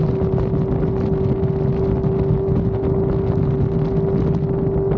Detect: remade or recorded recorded